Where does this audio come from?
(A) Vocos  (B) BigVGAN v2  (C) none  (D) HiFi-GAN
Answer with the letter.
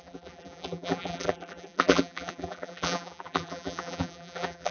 B